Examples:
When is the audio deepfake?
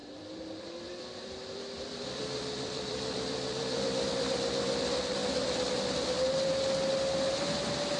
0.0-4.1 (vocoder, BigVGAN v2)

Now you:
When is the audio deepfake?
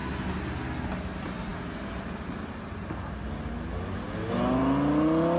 none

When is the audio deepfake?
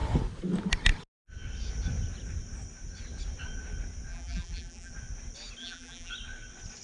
4.1-4.9 (vocoder, BigVGAN v2); 5.6-6.1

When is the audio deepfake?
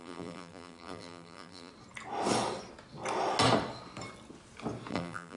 0.0-1.7 (vocoder, BigVGAN v2); 4.9-5.4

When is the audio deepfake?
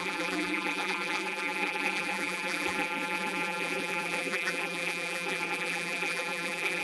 0.0-6.8 (vocoder, BigVGAN v2)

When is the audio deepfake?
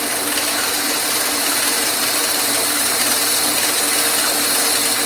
0.7-3.8 (vocoder, BigVGAN v2)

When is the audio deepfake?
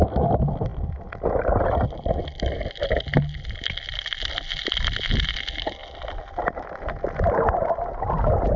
none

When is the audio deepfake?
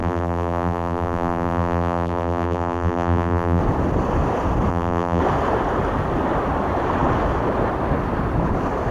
0.0-3.6 (vocoder, BigVGAN v2); 4.7-5.2